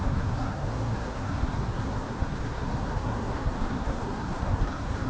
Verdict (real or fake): fake